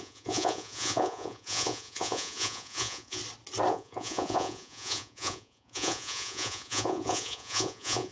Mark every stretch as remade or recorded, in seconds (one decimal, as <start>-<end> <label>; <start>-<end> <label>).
0.0-3.2 remade; 3.2-3.7 recorded; 3.7-8.1 remade